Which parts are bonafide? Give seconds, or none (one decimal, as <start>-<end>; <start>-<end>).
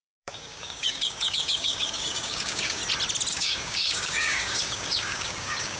2.8-3.3